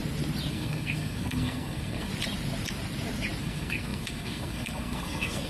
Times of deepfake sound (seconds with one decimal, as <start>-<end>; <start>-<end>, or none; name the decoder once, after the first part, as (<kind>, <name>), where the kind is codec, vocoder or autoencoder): 0.5-2.1 (codec, SNAC); 3.4-5.5